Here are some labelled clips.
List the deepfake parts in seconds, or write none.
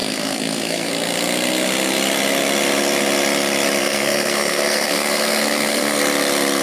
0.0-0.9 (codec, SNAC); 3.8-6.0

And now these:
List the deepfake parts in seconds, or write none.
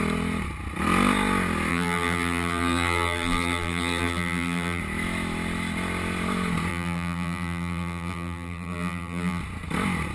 1.7-4.8 (vocoder, BigVGAN v2); 6.7-9.4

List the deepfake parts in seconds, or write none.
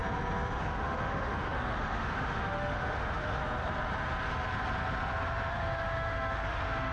0.6-3.4 (autoencoder, DAC-VAE); 5.5-6.9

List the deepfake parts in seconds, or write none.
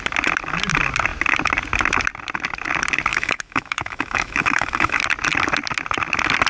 3.1-5.0 (autoencoder, DAC-VAE)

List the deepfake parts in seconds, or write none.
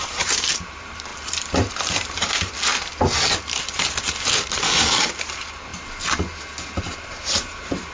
0.0-2.7 (vocoder, BigVGAN v2); 3.4-5.7; 6.8-7.9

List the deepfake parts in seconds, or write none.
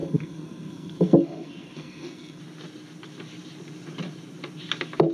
0.0-2.4 (codec, SNAC)